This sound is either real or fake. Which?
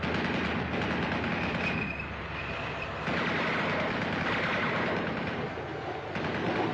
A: real